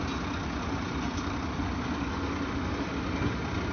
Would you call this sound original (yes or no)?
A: yes